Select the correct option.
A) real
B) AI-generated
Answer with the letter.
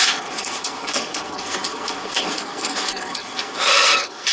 B